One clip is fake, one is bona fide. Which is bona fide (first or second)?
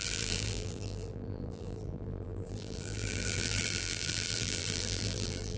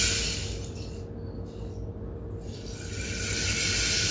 second